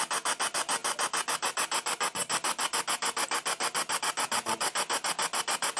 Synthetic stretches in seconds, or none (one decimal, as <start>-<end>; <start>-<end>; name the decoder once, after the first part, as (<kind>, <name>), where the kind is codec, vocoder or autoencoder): none